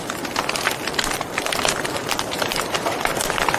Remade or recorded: remade